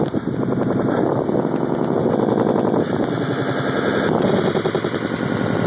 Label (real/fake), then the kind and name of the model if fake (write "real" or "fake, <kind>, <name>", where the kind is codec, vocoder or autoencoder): real